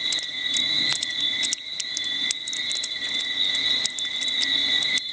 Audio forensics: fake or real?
real